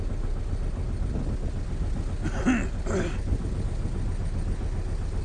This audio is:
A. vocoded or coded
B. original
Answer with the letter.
B